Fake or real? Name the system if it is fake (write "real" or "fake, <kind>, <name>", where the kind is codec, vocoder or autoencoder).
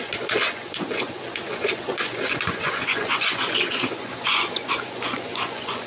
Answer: fake, vocoder, Vocos